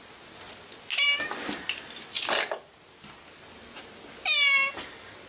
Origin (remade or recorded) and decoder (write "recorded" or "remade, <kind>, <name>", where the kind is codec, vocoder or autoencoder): recorded